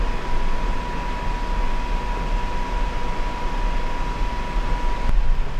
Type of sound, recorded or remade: recorded